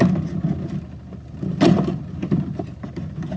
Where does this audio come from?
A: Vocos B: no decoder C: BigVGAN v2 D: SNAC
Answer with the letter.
B